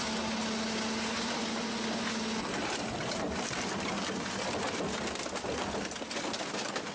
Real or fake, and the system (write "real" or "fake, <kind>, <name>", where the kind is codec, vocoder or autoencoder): real